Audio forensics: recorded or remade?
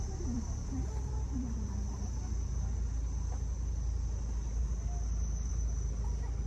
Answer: recorded